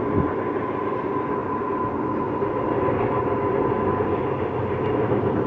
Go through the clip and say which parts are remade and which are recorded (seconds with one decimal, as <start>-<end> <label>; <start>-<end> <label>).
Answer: 0.0-5.5 recorded